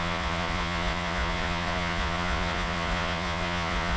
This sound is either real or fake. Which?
fake